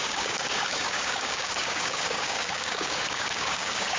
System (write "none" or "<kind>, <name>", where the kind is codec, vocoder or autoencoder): codec, DAC